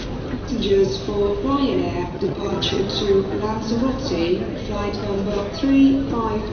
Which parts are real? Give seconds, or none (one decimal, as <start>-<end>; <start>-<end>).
0.0-2.1; 2.8-6.5